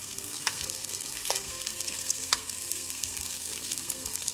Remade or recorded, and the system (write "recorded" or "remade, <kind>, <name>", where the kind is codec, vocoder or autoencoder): remade, codec, SNAC